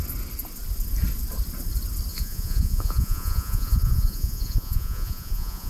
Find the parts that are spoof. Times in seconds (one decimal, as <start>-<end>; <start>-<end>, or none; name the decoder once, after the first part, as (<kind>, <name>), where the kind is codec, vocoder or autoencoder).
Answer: 2.1-5.7 (vocoder, Vocos)